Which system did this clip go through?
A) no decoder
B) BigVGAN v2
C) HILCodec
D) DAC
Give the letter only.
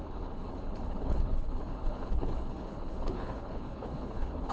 C